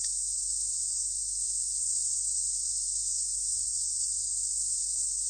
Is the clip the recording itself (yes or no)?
no